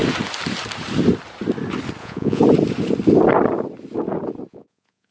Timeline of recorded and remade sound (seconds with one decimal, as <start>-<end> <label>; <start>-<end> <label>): 0.0-2.0 recorded; 2.0-2.4 remade; 2.4-4.5 recorded; 4.5-5.1 remade